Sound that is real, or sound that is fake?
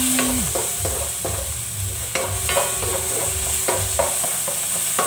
real